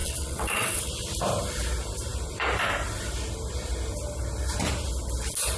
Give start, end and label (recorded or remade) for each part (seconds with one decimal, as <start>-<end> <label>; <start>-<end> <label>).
0.0-0.9 remade; 0.9-5.6 recorded